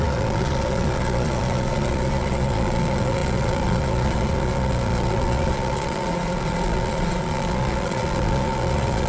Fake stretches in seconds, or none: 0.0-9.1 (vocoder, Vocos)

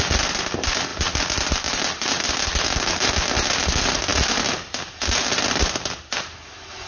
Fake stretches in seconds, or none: none

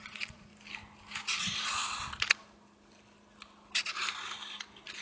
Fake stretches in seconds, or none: 0.0-0.5 (vocoder, Vocos); 1.1-1.8

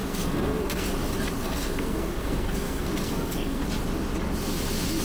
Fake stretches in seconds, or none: 0.0-0.9 (codec, SNAC); 1.4-3.7